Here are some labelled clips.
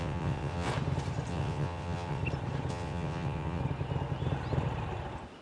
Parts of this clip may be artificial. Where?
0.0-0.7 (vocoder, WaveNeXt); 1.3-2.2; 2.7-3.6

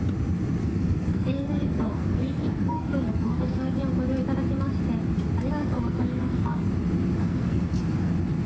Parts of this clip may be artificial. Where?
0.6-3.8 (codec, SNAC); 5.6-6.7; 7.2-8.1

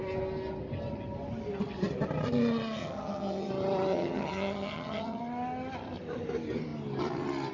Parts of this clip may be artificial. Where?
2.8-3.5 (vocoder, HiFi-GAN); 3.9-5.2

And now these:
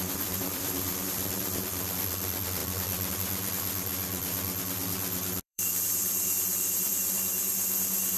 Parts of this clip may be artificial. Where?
0.0-7.5 (vocoder, BigVGAN v2)

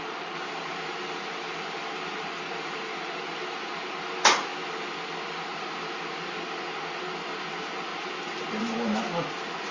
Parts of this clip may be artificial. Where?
none

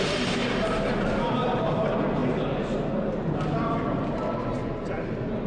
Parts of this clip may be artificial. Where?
none